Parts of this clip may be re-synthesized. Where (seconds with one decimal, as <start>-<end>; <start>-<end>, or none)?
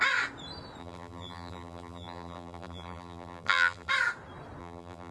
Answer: 0.8-3.9; 4.6-5.1